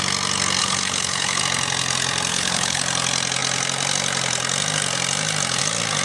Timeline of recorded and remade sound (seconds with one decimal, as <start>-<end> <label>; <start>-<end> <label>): 0.0-0.6 recorded; 0.6-1.4 remade; 1.4-2.3 recorded; 2.3-2.8 remade; 2.8-6.0 recorded